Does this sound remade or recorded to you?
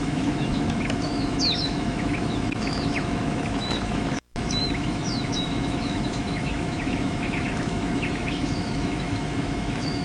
remade